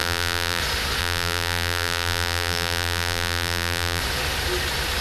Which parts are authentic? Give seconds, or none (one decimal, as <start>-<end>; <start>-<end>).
0.6-1.0; 4.0-5.0